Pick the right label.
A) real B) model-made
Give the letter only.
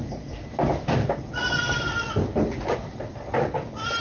A